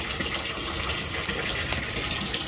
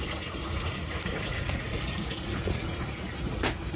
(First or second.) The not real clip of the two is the second